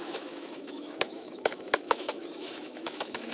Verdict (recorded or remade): remade